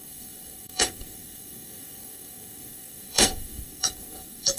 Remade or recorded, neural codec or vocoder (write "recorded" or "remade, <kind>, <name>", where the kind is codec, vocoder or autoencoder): remade, codec, SNAC